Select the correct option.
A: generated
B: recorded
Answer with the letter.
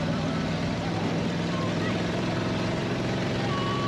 A